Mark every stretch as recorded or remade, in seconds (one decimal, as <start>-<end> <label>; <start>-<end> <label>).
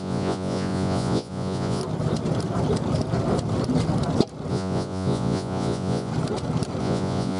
0.0-1.8 remade; 1.8-4.5 recorded; 4.5-6.1 remade; 6.1-6.8 recorded; 6.8-7.4 remade